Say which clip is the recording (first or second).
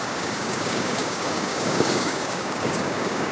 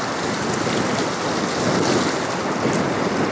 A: second